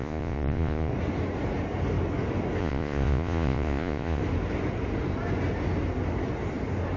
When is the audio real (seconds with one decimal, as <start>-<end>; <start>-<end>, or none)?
0.9-2.6; 4.2-7.0